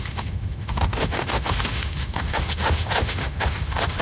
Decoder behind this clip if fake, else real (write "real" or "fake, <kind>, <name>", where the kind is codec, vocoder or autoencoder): fake, autoencoder, DAC-VAE